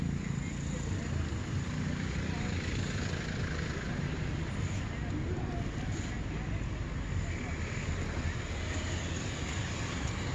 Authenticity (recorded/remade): recorded